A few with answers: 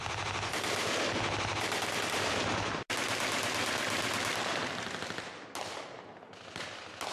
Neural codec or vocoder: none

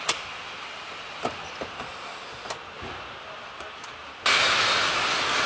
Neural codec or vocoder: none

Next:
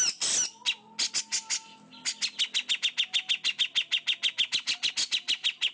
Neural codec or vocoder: none